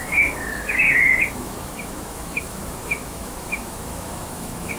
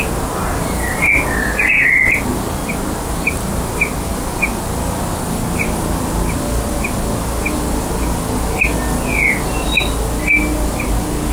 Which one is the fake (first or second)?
first